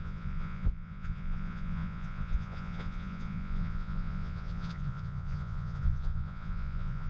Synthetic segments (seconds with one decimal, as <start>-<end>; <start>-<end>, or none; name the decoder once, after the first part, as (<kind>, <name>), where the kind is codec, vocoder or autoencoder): 0.0-7.1 (vocoder, Vocos)